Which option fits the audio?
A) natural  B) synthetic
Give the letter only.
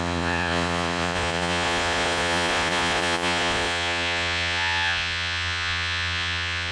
B